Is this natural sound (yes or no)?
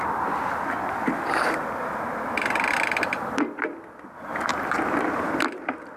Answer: yes